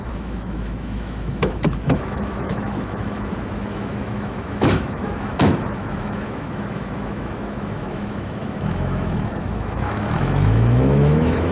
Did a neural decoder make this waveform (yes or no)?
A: yes